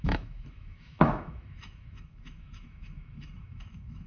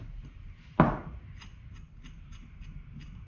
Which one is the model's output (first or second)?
first